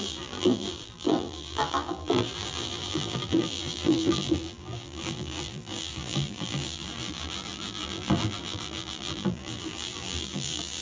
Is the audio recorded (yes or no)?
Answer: no